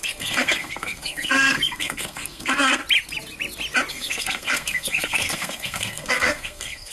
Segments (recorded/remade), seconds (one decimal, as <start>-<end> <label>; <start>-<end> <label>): 0.0-2.8 remade; 2.8-3.9 recorded; 3.9-6.9 remade